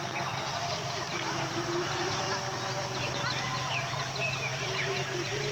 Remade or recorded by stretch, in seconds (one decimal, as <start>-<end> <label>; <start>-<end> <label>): 0.0-1.1 recorded; 1.1-2.2 remade; 2.2-3.5 recorded; 3.5-4.0 remade; 4.0-4.5 recorded; 4.5-5.5 remade